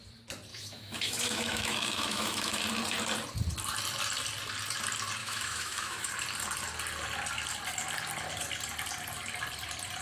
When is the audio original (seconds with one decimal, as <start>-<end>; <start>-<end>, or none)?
0.0-0.5; 2.6-5.2; 6.1-10.0